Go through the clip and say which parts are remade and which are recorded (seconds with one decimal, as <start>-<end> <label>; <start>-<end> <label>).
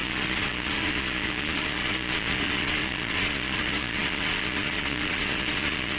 0.0-6.0 remade